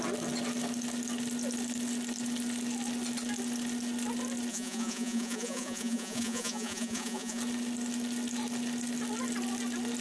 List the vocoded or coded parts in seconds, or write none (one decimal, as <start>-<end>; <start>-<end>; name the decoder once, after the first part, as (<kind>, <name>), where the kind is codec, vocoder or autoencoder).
4.5-7.4 (vocoder, Vocos)

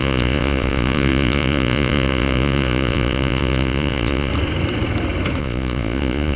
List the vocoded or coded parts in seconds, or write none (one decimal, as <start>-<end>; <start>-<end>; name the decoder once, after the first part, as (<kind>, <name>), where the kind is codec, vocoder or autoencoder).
0.0-4.3 (vocoder, Vocos); 5.4-6.4

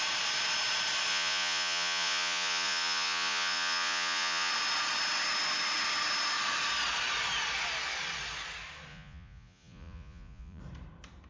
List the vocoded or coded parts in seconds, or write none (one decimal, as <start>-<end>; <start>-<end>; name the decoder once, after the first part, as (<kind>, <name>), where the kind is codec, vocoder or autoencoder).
1.1-4.5 (vocoder, Vocos); 8.9-10.6

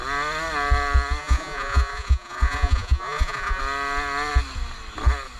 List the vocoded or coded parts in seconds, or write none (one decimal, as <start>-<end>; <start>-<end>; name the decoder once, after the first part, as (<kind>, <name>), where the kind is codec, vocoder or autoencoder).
1.2-3.6 (vocoder, Vocos)

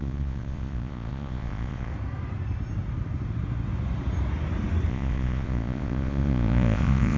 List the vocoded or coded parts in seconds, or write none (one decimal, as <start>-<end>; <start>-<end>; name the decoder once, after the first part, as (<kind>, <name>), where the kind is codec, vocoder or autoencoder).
0.0-1.9 (vocoder, Vocos); 4.9-7.2

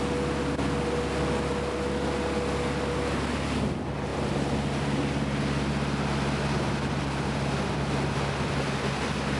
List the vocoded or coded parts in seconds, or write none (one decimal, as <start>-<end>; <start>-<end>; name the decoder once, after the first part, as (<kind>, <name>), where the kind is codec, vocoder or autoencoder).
none

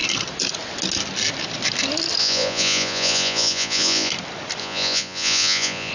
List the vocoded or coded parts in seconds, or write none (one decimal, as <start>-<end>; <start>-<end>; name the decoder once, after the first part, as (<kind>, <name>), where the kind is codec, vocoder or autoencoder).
2.2-4.1 (vocoder, Vocos); 4.6-5.9

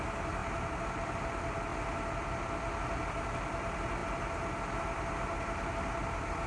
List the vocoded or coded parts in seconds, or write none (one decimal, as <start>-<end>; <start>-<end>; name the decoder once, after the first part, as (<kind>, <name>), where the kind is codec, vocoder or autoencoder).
none